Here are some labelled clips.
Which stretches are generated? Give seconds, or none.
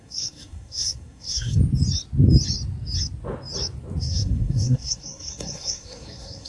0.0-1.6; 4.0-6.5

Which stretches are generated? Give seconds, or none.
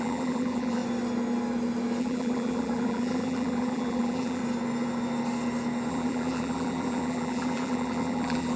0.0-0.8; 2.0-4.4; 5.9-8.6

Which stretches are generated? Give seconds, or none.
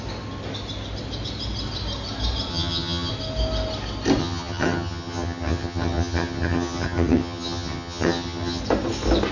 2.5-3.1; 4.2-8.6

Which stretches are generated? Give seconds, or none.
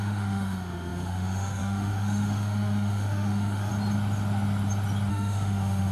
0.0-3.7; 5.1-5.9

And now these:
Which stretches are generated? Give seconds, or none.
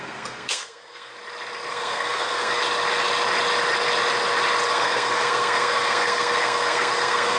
0.0-1.1; 1.7-2.6; 4.7-7.4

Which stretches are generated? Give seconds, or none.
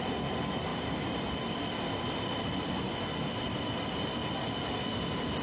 none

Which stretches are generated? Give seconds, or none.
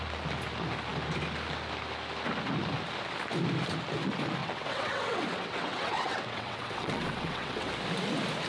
4.4-7.7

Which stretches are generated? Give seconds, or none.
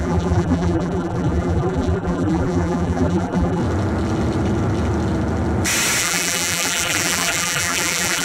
0.0-3.6; 6.0-8.2